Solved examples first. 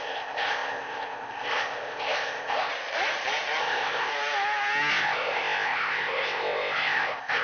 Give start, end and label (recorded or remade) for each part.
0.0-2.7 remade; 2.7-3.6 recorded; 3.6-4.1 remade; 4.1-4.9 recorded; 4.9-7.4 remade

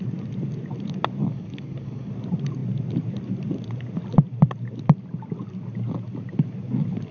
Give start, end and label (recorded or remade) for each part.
0.0-1.2 recorded; 1.2-2.1 remade; 2.1-7.1 recorded

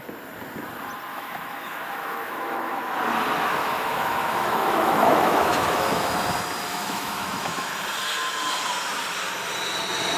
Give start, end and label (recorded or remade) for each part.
0.0-1.1 recorded; 1.1-2.8 remade; 2.8-3.6 recorded; 3.6-6.1 remade; 6.1-6.7 recorded; 6.7-7.7 remade; 7.7-10.2 recorded

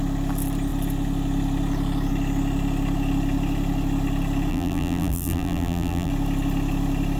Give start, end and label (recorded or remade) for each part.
0.0-4.5 recorded; 4.5-6.1 remade; 6.1-7.2 recorded